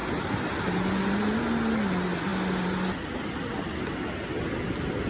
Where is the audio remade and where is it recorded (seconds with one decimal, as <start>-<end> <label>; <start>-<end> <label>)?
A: 0.0-5.1 recorded